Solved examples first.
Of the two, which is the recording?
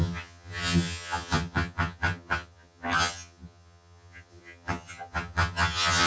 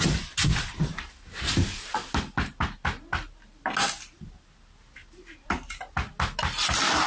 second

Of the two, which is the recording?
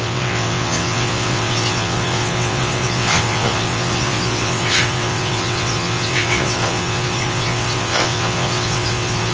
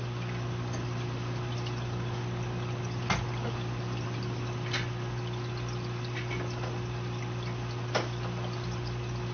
second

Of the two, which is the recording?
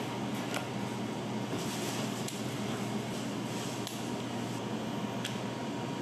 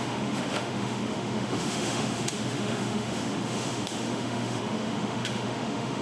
first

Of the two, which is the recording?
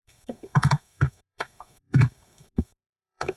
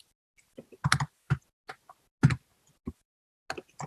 second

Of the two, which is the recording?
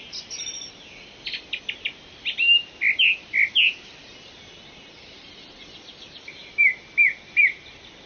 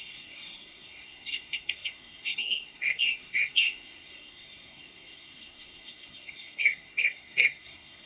first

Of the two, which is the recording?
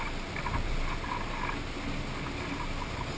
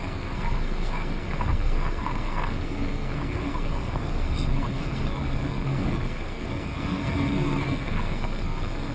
first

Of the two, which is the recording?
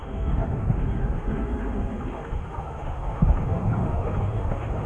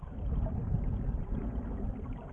second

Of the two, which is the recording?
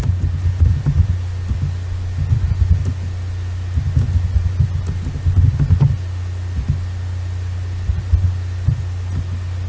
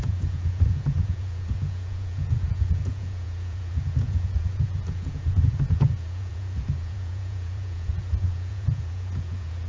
first